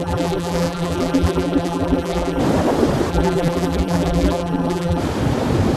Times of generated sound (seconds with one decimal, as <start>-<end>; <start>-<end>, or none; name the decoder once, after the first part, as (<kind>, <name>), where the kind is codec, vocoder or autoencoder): 0.0-2.4 (vocoder, BigVGAN v2); 3.1-5.0